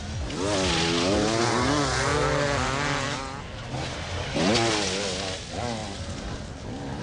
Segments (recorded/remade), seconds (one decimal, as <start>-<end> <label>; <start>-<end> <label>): 0.0-7.0 recorded